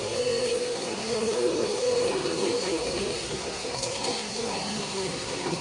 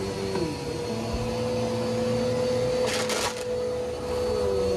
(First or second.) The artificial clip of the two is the first